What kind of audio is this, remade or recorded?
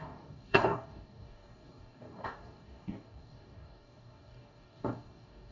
remade